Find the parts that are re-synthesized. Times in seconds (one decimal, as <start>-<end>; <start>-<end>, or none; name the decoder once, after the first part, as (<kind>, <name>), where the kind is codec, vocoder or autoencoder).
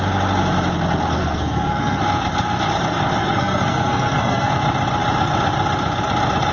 1.2-2.0 (codec, SNAC); 3.2-4.5